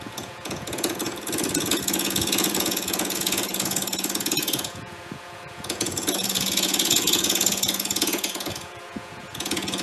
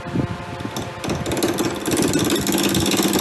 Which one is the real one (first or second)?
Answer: second